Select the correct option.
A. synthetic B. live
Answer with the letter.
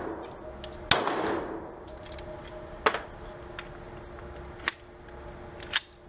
B